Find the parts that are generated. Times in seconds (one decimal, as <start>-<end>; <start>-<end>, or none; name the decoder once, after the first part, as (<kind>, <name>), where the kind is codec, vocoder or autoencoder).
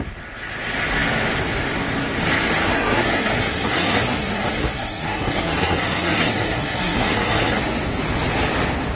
2.7-7.6 (codec, SNAC)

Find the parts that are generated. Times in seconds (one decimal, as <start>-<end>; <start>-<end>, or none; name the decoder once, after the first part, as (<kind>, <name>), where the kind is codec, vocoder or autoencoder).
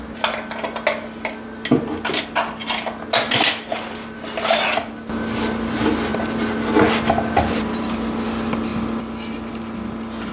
none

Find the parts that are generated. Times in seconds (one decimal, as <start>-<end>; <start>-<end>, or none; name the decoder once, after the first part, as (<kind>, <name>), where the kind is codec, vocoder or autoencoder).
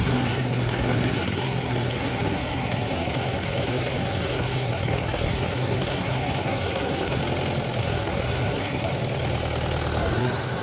0.0-7.2 (codec, SNAC); 7.8-8.9; 10.0-10.6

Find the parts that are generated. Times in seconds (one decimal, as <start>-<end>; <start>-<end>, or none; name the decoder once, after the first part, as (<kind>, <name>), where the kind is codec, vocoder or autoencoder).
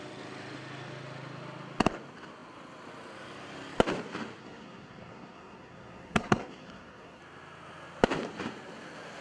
4.4-7.2 (codec, SNAC)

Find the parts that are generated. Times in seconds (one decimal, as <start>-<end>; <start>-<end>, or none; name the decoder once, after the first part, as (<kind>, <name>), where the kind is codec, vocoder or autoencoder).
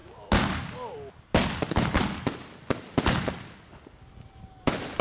none